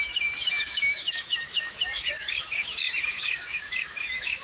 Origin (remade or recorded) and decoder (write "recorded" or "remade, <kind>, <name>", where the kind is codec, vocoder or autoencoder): remade, autoencoder, DAC-VAE